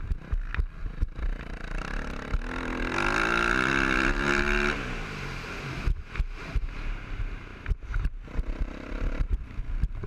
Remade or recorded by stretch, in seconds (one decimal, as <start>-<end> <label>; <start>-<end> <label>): 0.0-7.5 recorded; 7.5-9.6 remade; 9.6-10.1 recorded